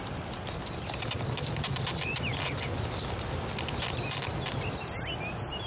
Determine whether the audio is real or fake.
real